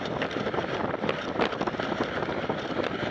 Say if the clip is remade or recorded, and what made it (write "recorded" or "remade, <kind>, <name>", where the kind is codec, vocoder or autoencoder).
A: remade, vocoder, BigVGAN v2